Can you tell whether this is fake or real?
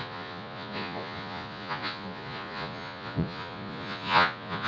fake